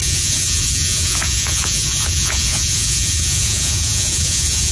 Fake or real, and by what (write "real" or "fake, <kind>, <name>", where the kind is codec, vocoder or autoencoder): fake, vocoder, Vocos